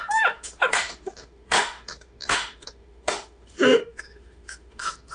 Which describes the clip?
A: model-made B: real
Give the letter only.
A